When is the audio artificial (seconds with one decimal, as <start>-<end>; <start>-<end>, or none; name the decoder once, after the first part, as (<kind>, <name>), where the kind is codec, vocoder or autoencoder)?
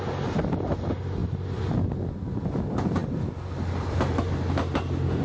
1.2-1.9 (vocoder, BigVGAN v2); 3.0-4.2